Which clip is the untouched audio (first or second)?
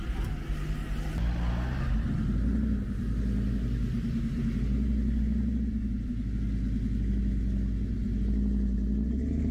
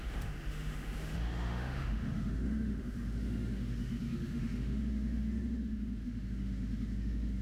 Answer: first